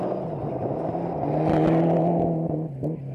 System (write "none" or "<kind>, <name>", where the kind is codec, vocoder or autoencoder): none